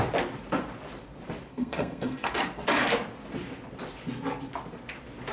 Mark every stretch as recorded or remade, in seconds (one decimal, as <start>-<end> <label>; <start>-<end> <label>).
0.0-1.5 recorded; 1.5-2.3 remade; 2.3-5.3 recorded